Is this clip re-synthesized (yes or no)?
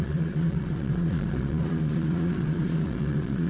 yes